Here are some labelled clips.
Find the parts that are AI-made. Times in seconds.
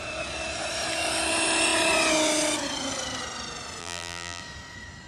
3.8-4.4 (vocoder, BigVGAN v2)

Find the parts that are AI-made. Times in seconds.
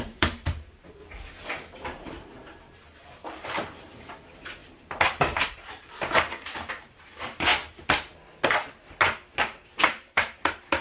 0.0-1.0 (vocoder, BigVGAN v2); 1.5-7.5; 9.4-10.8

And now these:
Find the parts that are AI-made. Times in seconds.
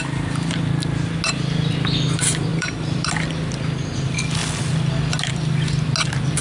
2.5-3.1 (vocoder, BigVGAN v2)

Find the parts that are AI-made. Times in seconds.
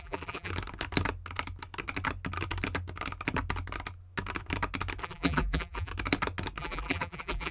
0.0-0.5 (vocoder, BigVGAN v2); 5.0-5.9; 6.6-7.5